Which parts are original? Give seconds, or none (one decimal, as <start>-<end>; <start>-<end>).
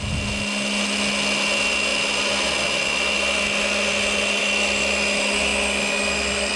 0.0-6.6